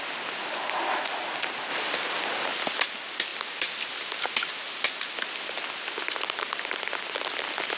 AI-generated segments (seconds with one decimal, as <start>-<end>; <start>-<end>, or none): 1.7-2.8; 3.3-3.9